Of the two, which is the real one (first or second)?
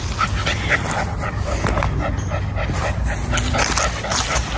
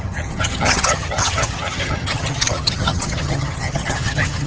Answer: first